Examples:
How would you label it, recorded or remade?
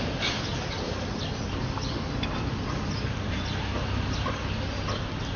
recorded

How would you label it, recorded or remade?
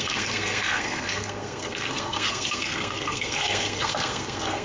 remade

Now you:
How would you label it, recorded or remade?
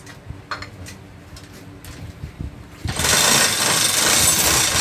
recorded